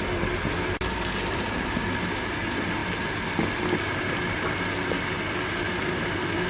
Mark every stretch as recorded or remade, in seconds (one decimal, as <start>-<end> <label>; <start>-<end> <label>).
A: 0.0-6.5 recorded